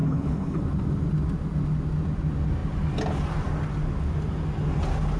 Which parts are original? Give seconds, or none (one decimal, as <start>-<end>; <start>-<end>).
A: 0.6-5.2

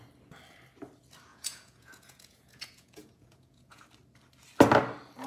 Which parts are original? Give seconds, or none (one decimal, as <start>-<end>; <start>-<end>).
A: 0.0-1.3; 3.8-5.3

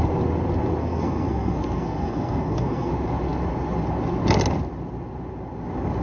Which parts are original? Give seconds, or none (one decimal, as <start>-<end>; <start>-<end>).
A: 0.0-0.8; 2.9-6.0

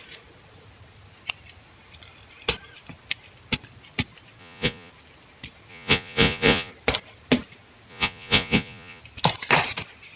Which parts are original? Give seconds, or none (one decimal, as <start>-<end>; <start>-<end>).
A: 0.0-4.4; 4.9-5.7; 6.7-7.9; 9.0-10.2

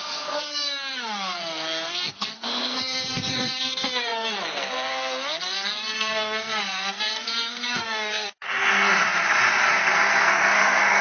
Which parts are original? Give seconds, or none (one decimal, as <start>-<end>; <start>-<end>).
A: 9.0-9.6

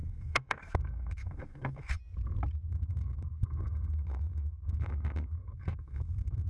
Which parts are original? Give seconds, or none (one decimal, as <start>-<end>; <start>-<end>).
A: 2.0-2.7

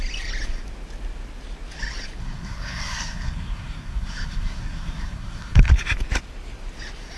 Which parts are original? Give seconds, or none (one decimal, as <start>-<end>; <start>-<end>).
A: 0.0-2.2; 5.7-7.2

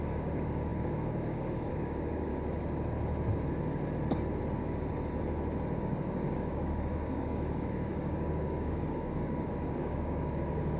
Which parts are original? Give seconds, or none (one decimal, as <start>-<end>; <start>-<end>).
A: 2.3-5.8